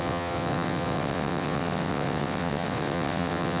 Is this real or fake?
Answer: fake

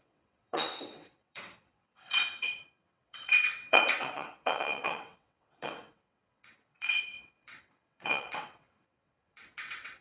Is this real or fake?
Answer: fake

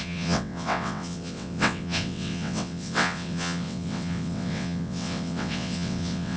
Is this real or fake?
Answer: fake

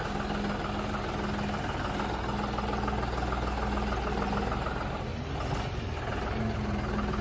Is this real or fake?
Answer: real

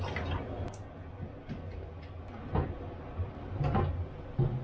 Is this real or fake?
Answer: real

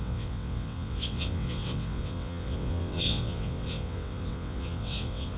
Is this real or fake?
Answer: fake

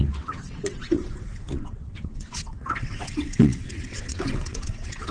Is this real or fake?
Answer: fake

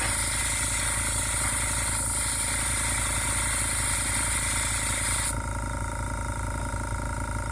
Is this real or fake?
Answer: real